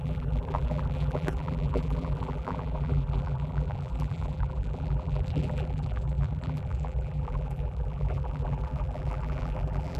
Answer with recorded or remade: remade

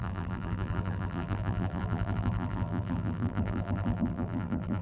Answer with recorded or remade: remade